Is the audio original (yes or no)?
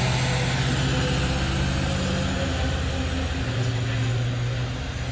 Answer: yes